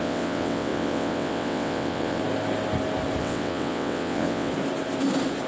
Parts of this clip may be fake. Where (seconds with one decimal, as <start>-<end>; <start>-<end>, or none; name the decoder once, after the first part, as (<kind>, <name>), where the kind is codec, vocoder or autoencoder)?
0.0-2.2 (vocoder, WaveNeXt); 3.2-4.5